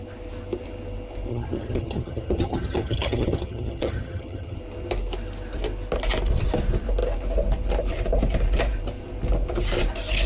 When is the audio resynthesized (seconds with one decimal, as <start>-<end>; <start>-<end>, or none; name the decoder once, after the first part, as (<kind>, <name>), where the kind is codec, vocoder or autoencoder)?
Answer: 1.3-4.6 (vocoder, HiFi-GAN)